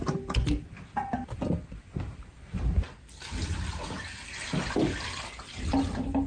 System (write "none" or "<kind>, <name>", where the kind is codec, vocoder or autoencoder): none